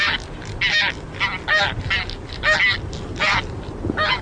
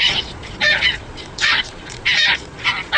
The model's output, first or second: second